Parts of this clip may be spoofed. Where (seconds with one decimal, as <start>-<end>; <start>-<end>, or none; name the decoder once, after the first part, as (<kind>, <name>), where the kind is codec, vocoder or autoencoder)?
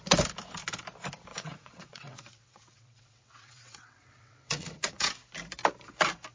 1.3-5.1 (vocoder, WaveNeXt)